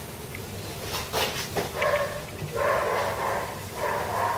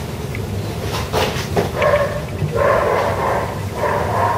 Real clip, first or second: first